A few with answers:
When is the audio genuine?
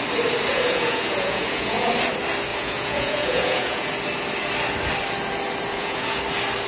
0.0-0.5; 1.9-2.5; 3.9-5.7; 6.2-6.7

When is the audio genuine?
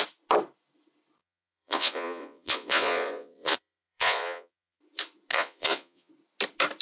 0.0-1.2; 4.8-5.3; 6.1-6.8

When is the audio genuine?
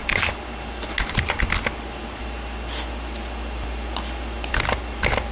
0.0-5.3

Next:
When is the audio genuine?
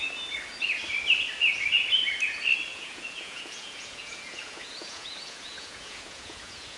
0.0-2.7